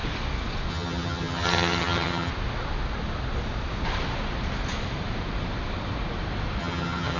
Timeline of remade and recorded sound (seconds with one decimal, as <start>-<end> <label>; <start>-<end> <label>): 0.0-0.7 recorded; 0.7-2.3 remade; 2.3-6.6 recorded; 6.6-7.2 remade